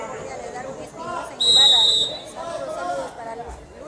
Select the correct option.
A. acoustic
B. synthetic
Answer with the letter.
A